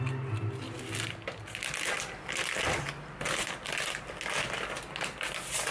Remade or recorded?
recorded